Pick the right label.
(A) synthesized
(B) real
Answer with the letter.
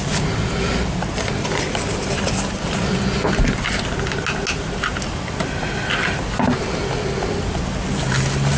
B